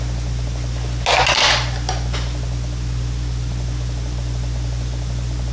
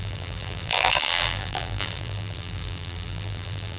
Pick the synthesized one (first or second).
second